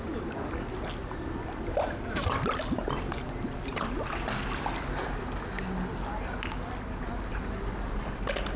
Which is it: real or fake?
real